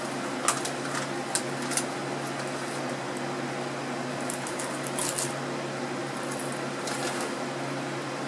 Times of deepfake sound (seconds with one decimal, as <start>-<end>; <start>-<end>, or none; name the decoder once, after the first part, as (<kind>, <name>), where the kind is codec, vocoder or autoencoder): none